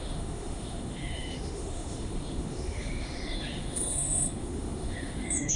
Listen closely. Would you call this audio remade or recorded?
remade